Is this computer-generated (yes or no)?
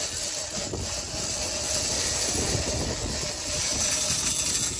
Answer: no